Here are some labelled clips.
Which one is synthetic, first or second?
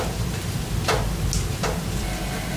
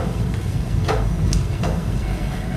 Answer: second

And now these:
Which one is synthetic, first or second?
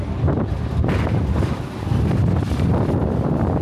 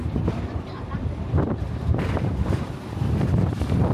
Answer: second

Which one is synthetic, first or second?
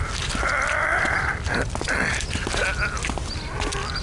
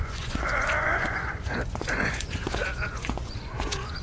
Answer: second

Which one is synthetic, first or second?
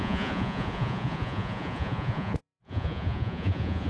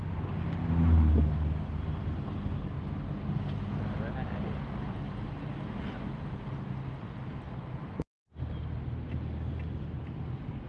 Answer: first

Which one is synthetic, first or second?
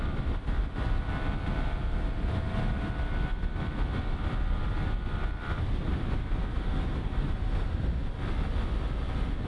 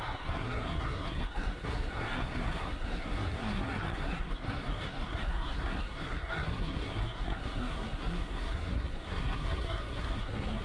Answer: second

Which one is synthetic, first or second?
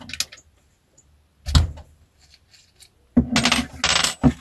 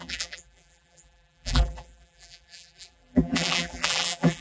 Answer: second